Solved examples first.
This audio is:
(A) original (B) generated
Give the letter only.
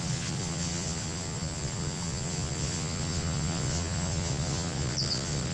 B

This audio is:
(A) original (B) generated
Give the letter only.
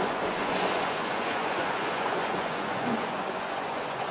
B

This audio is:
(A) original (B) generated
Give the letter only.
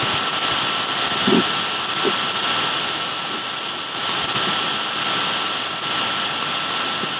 A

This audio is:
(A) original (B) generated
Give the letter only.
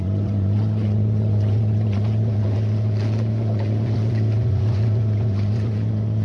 B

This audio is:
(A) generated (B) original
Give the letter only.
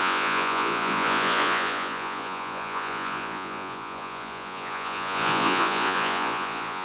A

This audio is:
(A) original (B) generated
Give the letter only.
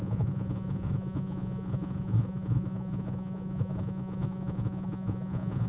B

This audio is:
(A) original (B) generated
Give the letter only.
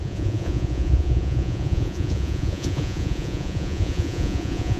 B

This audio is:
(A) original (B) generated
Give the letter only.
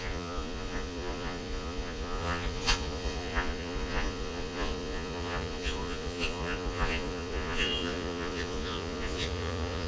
B